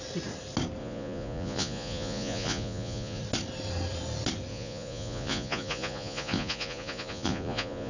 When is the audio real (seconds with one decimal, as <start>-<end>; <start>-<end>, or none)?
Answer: 0.0-0.8; 3.2-4.5